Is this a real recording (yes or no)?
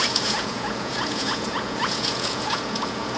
no